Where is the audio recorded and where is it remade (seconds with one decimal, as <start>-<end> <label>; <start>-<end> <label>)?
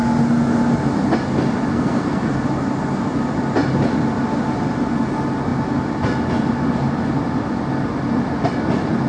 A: 0.0-1.7 recorded; 1.7-2.4 remade; 2.4-9.1 recorded